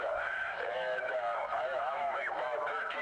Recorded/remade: remade